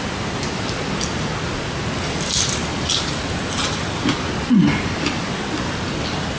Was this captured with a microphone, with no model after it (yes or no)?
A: yes